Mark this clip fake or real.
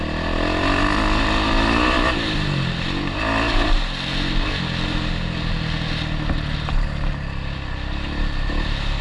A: real